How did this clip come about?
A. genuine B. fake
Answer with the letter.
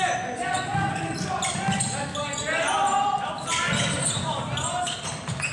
A